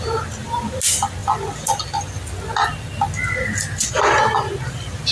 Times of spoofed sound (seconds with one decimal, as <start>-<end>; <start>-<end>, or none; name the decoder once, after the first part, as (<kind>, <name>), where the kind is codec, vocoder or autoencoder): none